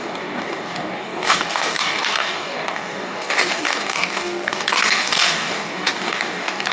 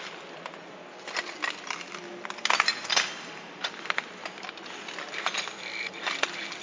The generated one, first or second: first